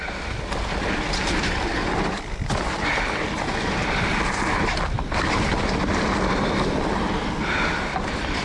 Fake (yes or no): no